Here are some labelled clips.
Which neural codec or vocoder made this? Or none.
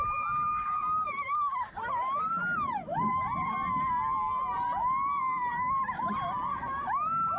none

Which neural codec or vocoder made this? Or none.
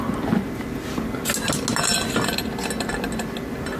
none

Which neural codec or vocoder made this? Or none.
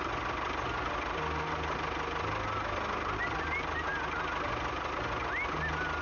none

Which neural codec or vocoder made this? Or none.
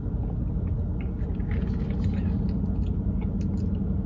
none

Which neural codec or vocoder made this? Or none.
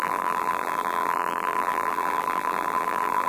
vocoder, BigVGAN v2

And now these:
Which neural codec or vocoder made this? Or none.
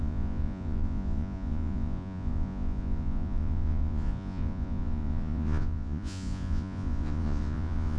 vocoder, Vocos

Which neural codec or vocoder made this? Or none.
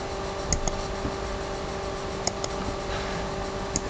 none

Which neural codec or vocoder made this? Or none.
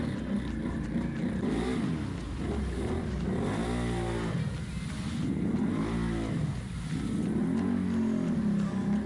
none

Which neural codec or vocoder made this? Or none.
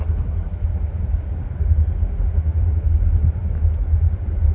none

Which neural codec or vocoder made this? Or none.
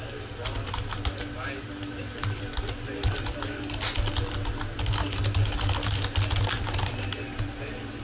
none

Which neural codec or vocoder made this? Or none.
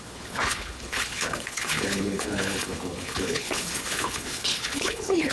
codec, HILCodec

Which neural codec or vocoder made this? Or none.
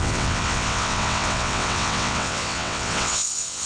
vocoder, WaveNeXt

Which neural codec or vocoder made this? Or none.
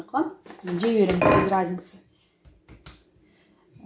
none